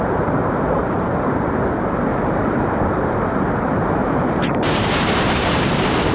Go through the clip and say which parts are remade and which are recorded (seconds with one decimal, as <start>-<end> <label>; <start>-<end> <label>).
0.0-6.1 remade